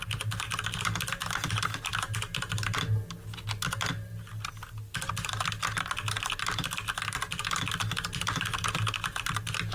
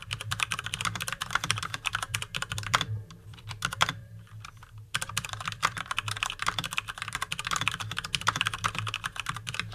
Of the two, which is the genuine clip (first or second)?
first